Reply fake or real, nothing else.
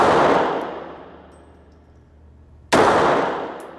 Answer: real